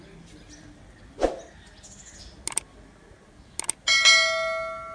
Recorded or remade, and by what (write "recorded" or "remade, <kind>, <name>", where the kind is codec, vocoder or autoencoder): recorded